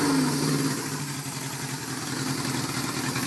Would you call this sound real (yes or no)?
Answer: yes